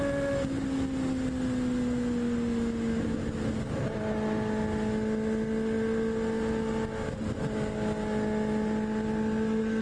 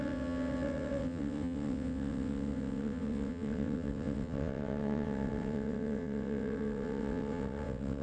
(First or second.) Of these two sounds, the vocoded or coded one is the second